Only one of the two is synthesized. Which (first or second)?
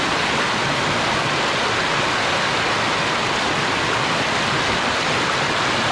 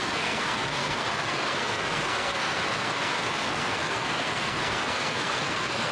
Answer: second